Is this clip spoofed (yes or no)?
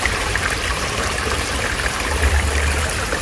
yes